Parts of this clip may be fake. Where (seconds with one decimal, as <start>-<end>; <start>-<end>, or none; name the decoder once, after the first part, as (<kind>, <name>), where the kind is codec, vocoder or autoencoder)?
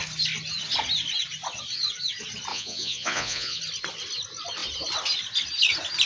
2.5-3.6 (vocoder, Vocos)